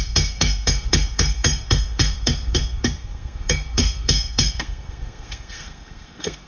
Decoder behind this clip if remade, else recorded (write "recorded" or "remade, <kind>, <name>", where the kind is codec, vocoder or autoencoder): remade, codec, SNAC